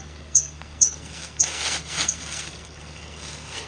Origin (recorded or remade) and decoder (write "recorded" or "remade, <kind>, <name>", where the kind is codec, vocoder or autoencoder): remade, codec, SNAC